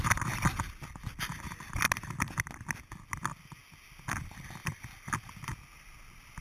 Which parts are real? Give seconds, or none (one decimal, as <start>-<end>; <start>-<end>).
0.0-6.4